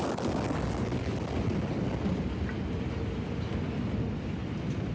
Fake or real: real